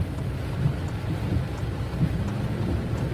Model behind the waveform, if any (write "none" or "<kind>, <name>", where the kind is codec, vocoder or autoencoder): none